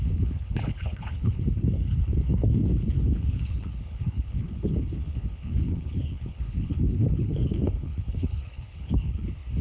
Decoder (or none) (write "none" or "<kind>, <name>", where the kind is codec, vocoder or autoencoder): codec, HILCodec